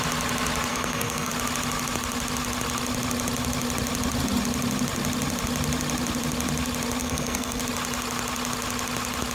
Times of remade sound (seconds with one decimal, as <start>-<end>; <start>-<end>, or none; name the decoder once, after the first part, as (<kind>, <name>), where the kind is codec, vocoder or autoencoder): 0.7-1.3 (codec, SNAC); 7.0-7.6